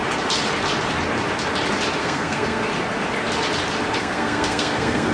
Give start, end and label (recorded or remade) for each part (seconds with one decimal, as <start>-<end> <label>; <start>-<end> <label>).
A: 0.0-2.0 recorded; 2.0-2.7 remade; 2.7-4.0 recorded; 4.0-5.1 remade